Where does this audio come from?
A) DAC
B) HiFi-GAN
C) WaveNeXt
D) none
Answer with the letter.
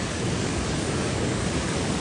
A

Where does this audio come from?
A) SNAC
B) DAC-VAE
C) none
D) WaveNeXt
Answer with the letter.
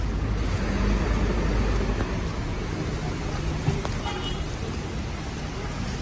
C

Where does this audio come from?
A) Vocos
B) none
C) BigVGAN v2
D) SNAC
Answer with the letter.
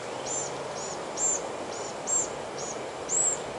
B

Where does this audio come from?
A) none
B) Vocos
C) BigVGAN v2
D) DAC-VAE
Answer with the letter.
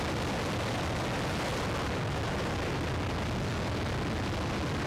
A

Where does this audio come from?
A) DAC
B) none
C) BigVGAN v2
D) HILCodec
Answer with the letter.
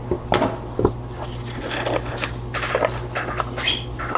B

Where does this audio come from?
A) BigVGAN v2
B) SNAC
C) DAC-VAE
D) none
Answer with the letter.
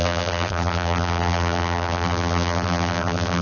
A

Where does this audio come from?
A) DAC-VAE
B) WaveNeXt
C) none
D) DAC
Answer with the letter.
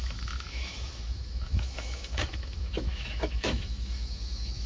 A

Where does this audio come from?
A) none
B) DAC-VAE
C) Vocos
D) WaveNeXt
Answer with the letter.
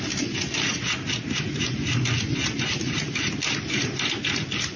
A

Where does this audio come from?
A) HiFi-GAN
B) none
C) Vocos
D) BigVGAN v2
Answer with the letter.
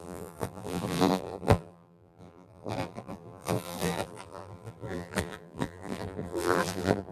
D